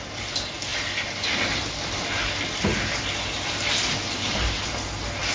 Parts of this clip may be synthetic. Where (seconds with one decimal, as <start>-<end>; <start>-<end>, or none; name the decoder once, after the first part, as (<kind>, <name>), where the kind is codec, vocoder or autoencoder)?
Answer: none